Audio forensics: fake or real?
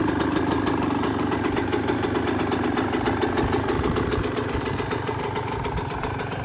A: real